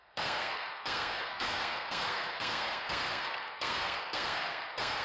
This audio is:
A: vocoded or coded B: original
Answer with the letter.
A